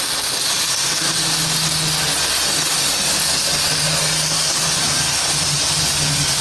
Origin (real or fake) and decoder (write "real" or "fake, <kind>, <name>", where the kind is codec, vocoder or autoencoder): real